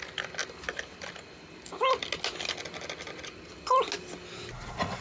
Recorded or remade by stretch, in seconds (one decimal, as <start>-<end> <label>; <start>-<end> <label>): 0.0-5.0 recorded